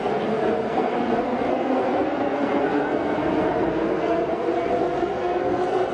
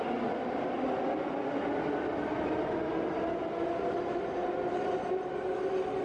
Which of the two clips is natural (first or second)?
second